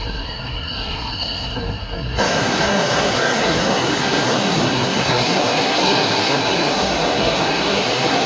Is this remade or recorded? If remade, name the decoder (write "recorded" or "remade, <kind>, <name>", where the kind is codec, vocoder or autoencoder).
remade, codec, SNAC